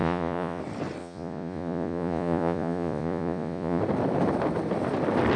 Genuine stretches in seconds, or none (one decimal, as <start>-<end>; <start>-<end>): 0.6-1.0; 3.8-5.4

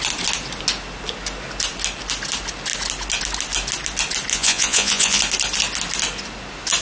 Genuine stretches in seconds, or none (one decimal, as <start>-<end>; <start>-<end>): 0.0-4.3; 5.2-6.8

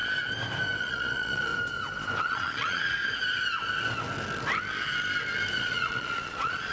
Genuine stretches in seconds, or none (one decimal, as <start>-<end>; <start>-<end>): 0.0-0.8; 1.5-2.2; 3.0-5.6

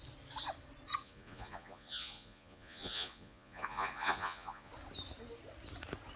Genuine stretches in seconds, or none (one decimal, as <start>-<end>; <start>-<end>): 0.0-1.0; 4.7-6.2

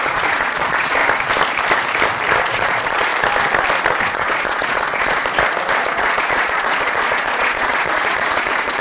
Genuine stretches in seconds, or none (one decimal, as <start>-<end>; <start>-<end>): 1.0-2.4; 3.1-4.0; 5.2-5.7

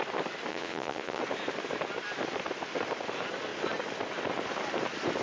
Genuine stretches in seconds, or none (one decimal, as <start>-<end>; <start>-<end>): 0.0-0.5; 1.2-5.2

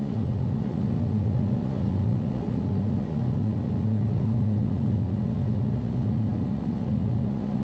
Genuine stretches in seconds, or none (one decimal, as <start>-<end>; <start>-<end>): none

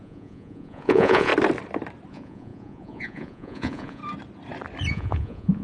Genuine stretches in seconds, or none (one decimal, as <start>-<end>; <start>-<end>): 1.3-2.1; 4.0-4.9